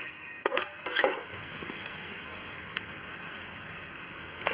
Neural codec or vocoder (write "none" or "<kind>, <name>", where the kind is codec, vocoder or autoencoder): codec, SNAC